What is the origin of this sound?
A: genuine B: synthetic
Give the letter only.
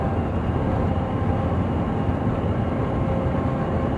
A